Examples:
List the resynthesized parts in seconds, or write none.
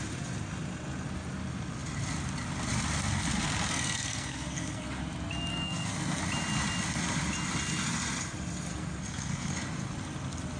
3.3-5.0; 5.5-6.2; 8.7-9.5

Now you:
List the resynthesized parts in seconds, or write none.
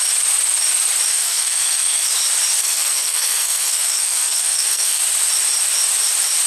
1.1-2.1; 2.6-5.0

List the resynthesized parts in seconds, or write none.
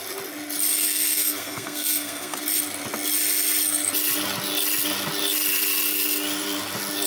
0.7-2.4